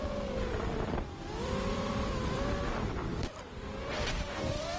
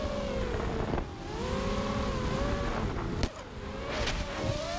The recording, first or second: second